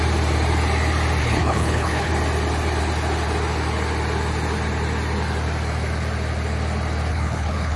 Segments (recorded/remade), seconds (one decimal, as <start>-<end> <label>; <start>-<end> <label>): 0.0-1.2 recorded; 1.2-2.1 remade; 2.1-7.1 recorded; 7.1-7.8 remade